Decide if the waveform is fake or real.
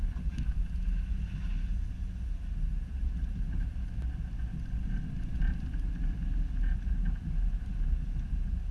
real